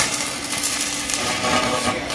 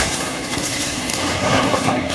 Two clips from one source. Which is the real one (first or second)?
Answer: first